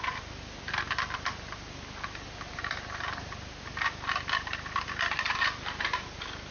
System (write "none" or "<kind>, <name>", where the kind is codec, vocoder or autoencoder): none